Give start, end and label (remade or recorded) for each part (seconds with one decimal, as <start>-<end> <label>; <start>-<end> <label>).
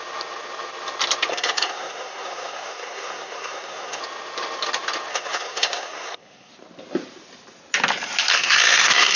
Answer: 0.0-1.3 recorded; 1.3-4.0 remade; 4.0-5.1 recorded; 5.1-6.5 remade; 6.5-8.3 recorded; 8.3-9.2 remade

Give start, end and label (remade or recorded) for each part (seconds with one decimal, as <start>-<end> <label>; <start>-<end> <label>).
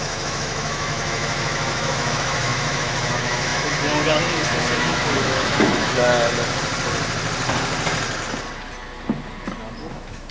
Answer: 0.0-6.1 remade; 6.1-9.9 recorded; 9.9-10.3 remade